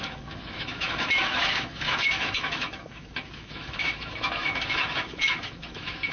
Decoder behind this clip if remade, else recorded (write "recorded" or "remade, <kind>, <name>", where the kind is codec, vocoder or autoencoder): remade, autoencoder, DAC-VAE